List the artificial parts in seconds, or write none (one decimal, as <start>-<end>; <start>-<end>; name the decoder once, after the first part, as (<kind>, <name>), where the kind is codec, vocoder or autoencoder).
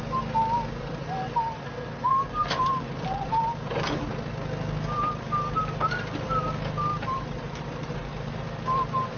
2.1-4.0 (vocoder, BigVGAN v2); 6.9-8.3